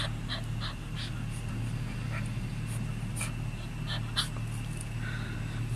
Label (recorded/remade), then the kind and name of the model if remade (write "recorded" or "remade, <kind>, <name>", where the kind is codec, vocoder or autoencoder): recorded